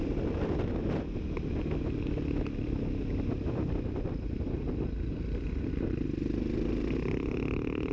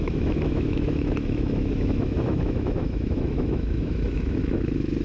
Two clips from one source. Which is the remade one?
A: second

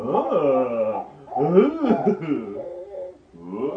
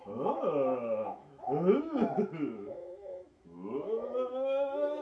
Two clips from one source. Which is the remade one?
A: second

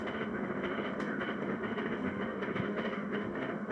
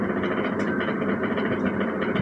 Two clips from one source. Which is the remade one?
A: first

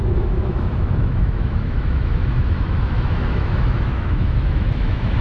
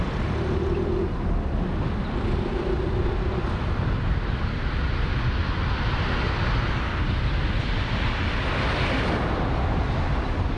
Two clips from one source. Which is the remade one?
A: first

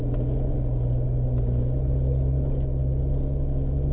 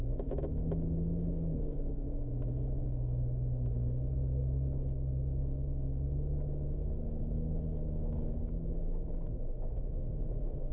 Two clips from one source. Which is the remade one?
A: second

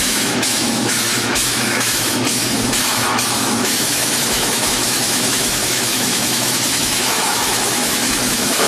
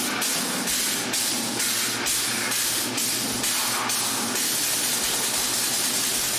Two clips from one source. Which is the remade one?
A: first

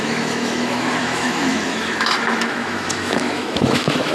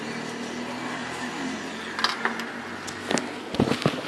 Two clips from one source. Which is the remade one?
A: first